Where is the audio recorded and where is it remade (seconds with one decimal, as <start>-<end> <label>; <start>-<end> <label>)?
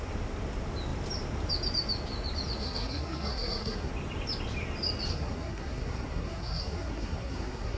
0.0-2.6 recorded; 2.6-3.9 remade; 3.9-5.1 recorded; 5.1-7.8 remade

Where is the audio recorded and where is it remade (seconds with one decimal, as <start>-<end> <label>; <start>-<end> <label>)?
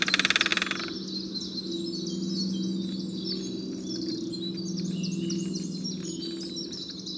0.0-7.2 recorded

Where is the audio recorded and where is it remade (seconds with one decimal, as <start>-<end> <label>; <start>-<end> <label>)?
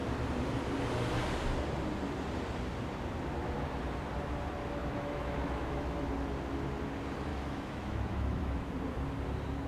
0.0-4.8 recorded; 4.8-6.1 remade; 6.1-7.3 recorded; 7.3-8.7 remade; 8.7-9.7 recorded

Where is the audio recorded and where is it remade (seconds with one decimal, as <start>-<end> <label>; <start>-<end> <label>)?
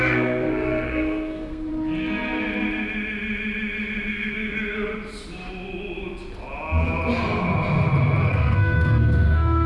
0.0-1.7 remade; 1.7-4.1 recorded; 4.1-4.5 remade; 4.5-8.3 recorded; 8.3-9.7 remade